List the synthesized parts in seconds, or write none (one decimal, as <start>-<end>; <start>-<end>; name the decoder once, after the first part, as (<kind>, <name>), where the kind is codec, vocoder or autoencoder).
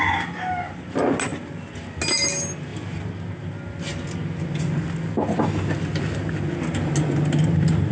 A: none